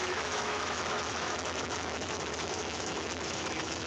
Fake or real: fake